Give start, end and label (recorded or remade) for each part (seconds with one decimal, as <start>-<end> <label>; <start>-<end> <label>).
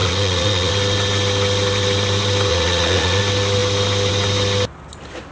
0.0-0.7 remade; 0.7-2.5 recorded; 2.5-3.2 remade; 3.2-5.3 recorded